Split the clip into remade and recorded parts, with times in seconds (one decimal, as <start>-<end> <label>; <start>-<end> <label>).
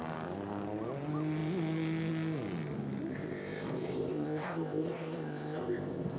0.0-3.1 recorded; 3.1-6.2 remade